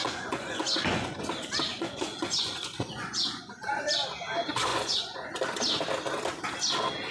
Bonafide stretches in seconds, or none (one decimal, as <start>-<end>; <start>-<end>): 1.2-1.7; 3.7-4.7; 5.3-7.1